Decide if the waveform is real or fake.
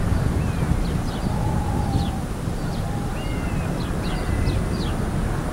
real